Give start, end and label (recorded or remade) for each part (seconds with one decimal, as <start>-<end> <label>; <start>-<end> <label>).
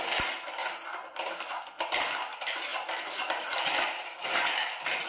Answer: 0.0-5.1 recorded